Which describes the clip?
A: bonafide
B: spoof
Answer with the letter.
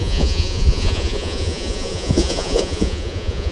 B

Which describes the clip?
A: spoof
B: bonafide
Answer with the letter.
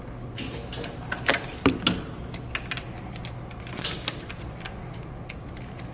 B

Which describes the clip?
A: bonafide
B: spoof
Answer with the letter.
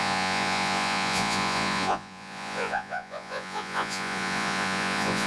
B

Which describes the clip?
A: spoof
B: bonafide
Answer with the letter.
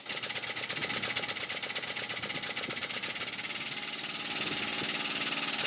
B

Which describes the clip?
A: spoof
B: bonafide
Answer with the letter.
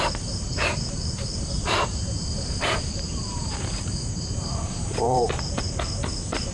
A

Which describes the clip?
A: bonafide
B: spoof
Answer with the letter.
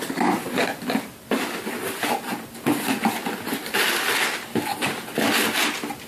A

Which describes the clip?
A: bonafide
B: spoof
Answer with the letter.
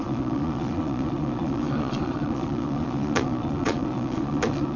B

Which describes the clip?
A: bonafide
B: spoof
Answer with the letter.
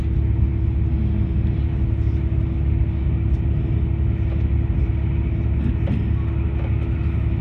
A